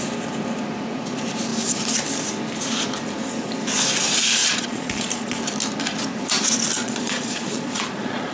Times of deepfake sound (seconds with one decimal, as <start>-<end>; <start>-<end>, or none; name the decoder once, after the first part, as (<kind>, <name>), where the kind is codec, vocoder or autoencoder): 4.4-5.4 (vocoder, Vocos); 6.8-8.3